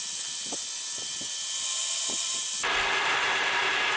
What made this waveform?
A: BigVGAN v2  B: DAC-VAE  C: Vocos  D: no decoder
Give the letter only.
D